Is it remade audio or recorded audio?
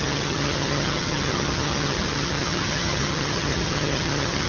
remade